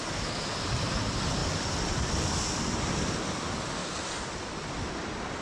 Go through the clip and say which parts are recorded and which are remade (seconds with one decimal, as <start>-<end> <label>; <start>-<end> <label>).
0.0-1.4 recorded; 1.4-2.8 remade; 2.8-3.8 recorded; 3.8-5.0 remade; 5.0-5.4 recorded